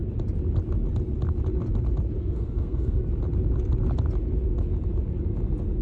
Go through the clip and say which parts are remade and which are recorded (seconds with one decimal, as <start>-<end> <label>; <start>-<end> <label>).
0.0-2.2 recorded; 2.2-3.0 remade; 3.0-5.8 recorded